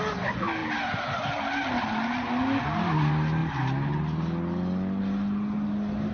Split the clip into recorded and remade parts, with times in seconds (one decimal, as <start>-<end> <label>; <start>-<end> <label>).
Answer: 0.0-6.1 recorded